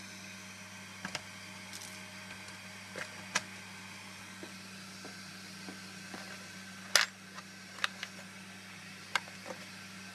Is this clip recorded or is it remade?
recorded